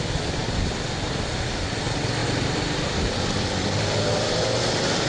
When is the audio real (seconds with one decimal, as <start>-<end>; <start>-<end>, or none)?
0.0-2.2; 4.1-5.1